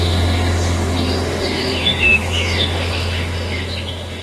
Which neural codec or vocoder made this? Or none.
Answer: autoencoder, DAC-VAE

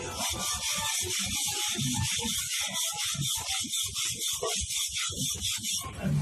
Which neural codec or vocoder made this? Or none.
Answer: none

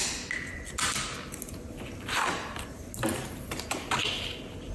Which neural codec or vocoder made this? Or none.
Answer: none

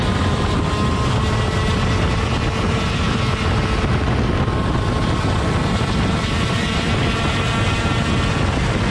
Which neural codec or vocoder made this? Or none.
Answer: none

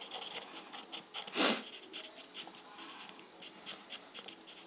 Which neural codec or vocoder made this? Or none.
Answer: none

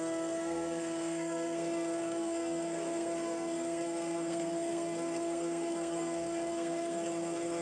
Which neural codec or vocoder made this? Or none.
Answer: codec, SNAC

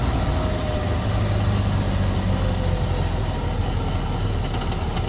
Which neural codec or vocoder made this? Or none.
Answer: none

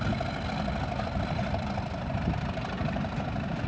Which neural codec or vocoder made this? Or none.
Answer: none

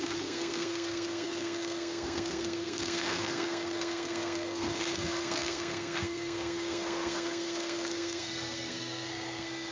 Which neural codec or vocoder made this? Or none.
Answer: codec, SNAC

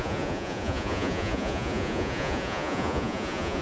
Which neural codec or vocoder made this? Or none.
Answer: vocoder, Vocos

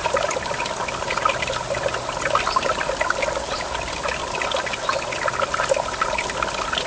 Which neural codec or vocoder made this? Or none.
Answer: none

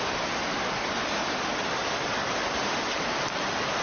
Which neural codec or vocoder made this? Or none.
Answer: none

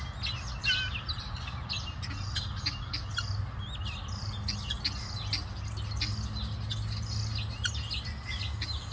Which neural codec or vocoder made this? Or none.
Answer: none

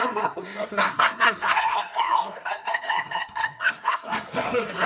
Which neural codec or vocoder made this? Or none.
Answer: codec, SNAC